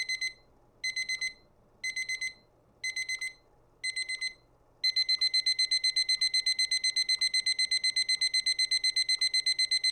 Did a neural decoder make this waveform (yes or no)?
no